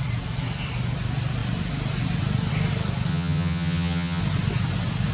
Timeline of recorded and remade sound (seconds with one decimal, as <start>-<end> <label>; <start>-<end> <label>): 0.0-3.1 recorded; 3.1-4.2 remade; 4.2-5.1 recorded